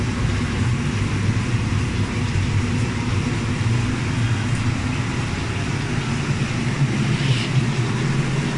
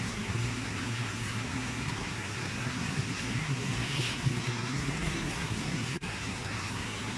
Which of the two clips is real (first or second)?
first